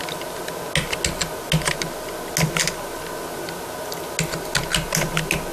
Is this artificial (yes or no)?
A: no